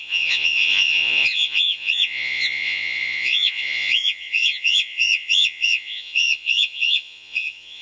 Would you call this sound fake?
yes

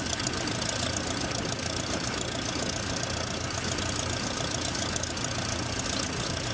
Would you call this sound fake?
no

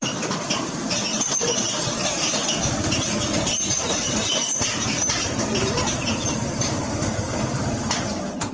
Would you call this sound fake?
yes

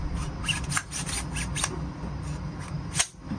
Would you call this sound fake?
no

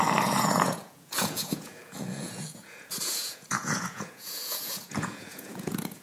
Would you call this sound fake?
yes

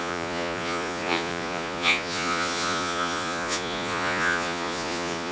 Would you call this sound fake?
yes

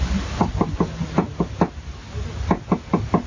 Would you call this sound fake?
no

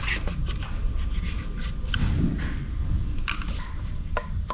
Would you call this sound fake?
yes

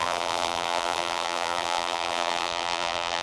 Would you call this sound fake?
yes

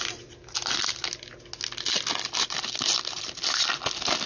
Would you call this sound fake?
no